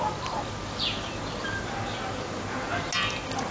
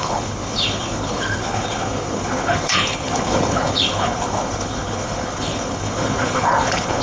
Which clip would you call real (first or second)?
first